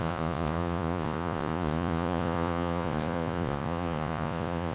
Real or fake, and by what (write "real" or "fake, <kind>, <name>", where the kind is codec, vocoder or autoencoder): fake, vocoder, Vocos